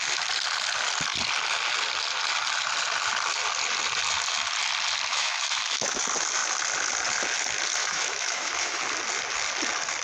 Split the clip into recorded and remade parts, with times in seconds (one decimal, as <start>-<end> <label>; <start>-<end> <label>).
0.0-5.1 recorded; 5.1-6.0 remade; 6.0-7.8 recorded; 7.8-8.8 remade; 8.8-10.0 recorded